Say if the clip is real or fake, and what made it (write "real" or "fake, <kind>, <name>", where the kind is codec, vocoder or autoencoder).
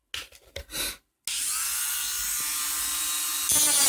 real